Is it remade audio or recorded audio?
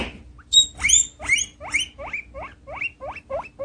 recorded